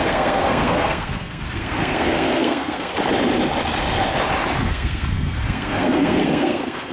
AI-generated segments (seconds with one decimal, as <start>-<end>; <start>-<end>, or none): 0.0-2.9; 4.6-6.9

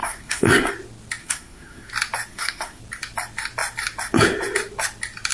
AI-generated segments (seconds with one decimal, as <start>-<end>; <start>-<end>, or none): 0.0-0.7; 1.2-1.9; 2.3-2.8

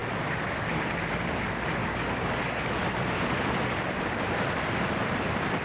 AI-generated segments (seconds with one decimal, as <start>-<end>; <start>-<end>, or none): 1.8-2.8